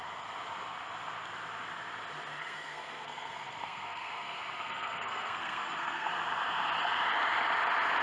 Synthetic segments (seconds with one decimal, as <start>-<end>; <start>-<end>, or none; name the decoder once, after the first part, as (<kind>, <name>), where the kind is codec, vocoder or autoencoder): 2.4-6.1 (codec, SNAC)